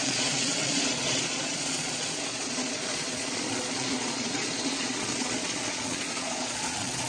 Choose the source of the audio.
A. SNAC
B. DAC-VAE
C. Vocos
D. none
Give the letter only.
C